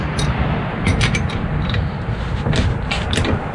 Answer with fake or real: real